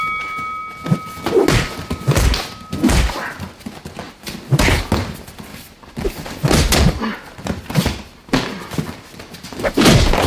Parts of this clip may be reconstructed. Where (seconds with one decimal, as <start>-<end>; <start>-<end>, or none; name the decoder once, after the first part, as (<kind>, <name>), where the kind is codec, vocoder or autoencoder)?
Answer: none